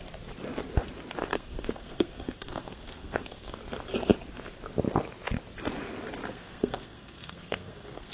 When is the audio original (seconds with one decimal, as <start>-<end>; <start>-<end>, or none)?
0.0-1.3; 3.6-6.3